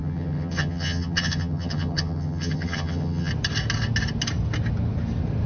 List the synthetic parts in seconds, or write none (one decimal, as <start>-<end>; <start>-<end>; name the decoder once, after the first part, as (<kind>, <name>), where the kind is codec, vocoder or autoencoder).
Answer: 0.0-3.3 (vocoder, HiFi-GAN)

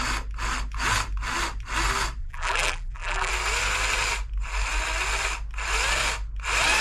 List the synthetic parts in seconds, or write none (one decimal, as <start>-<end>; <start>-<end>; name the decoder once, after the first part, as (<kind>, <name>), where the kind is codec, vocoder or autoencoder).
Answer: 2.2-3.3 (vocoder, BigVGAN v2)

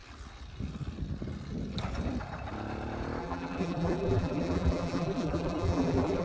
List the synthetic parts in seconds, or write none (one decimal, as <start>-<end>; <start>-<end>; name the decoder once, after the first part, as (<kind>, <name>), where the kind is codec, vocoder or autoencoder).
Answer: 3.2-6.2 (vocoder, BigVGAN v2)